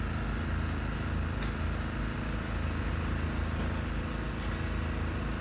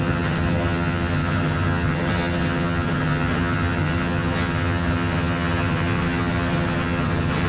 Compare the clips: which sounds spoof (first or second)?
second